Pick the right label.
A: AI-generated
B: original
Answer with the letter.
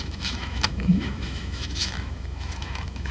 A